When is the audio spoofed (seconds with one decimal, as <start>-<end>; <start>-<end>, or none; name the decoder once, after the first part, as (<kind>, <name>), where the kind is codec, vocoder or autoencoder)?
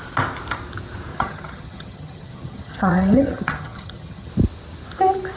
1.1-4.3 (vocoder, HiFi-GAN)